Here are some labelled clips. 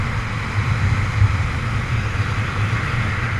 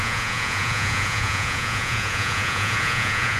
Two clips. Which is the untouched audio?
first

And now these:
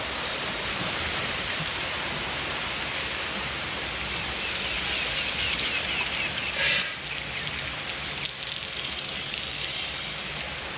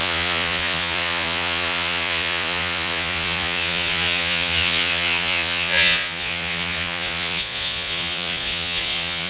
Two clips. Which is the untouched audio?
first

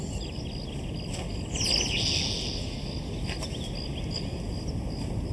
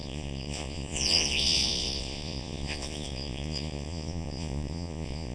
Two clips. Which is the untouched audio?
first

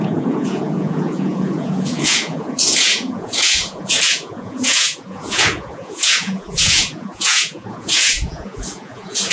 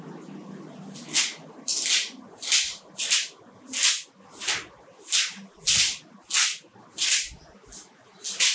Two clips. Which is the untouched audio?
second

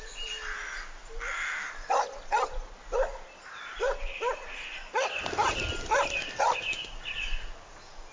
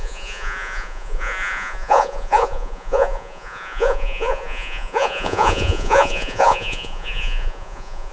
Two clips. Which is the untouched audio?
first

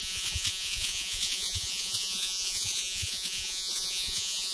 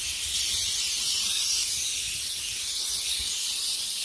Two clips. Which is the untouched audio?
second